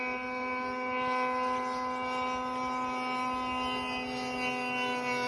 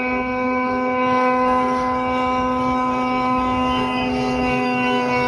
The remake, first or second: second